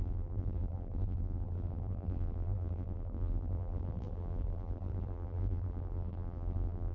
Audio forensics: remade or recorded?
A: remade